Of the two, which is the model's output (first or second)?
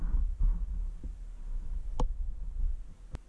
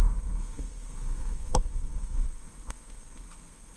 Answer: second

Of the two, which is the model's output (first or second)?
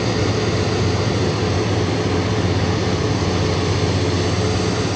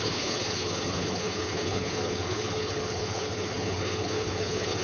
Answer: second